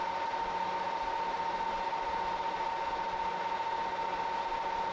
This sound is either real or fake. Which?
real